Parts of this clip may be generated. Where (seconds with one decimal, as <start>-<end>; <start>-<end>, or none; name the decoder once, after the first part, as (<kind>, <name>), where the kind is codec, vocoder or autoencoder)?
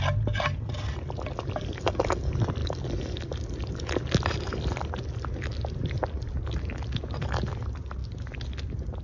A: none